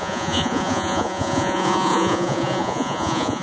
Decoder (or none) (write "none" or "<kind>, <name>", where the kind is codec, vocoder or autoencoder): vocoder, Vocos